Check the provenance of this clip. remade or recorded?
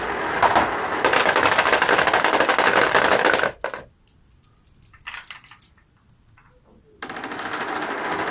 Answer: recorded